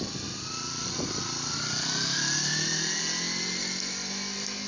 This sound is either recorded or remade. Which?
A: recorded